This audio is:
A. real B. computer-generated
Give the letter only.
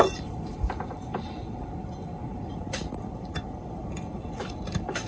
B